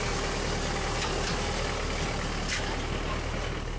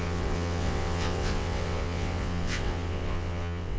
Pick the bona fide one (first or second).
first